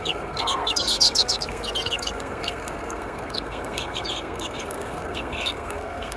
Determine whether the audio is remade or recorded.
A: remade